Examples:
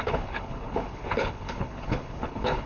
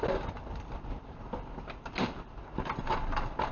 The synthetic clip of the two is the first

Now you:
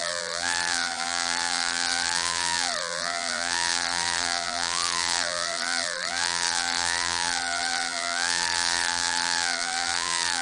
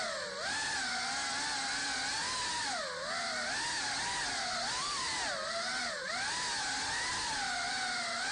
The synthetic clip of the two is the first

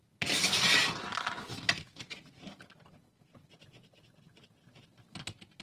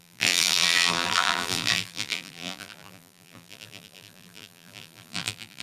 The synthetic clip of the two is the second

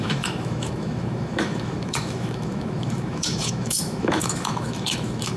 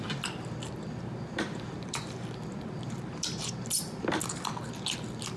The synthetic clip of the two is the first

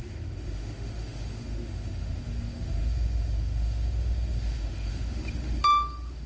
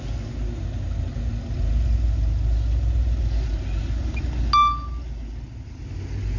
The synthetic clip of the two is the first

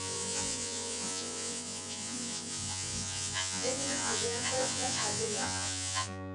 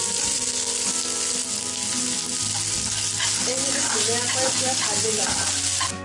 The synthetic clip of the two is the first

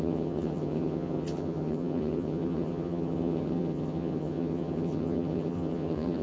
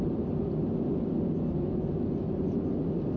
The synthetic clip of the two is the first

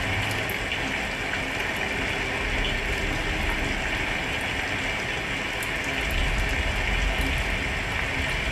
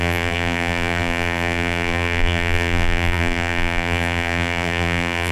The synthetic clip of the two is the second